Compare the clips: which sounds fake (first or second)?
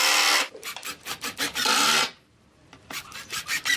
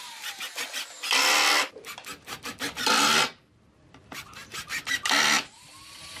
first